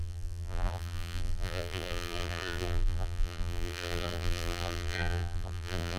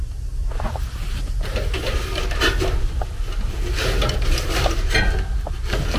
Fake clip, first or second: first